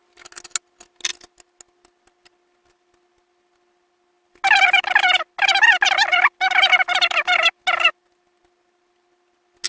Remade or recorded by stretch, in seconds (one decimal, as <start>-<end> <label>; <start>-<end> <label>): 0.0-9.7 recorded